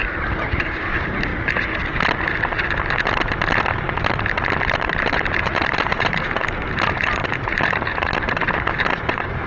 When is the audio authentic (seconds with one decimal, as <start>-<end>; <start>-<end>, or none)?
1.3-4.6